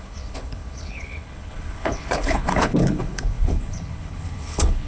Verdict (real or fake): fake